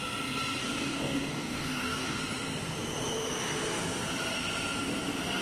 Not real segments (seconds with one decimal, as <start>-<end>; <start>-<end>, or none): 0.6-2.2